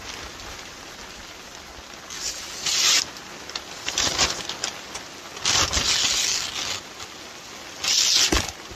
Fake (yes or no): no